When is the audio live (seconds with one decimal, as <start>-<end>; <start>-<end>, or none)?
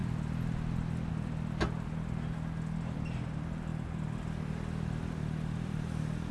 0.0-6.3